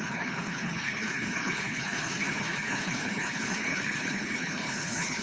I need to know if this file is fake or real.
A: fake